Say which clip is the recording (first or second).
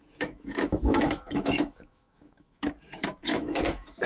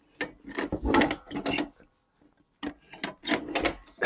second